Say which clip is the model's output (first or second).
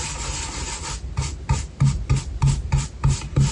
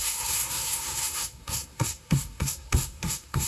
second